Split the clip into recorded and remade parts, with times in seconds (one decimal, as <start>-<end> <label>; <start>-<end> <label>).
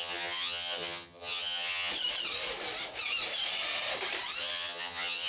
0.0-1.9 remade; 1.9-4.4 recorded; 4.4-5.3 remade